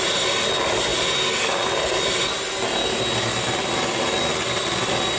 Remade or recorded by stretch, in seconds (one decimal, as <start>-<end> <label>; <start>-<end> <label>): 0.0-5.2 recorded